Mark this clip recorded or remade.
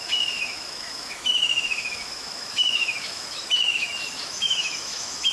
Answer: remade